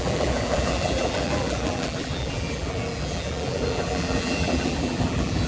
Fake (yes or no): yes